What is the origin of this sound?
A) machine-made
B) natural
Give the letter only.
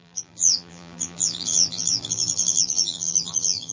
A